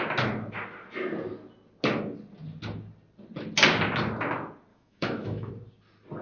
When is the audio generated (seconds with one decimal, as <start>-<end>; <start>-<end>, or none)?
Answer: 4.7-5.5